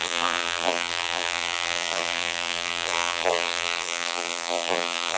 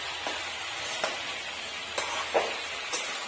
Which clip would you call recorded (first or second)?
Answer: second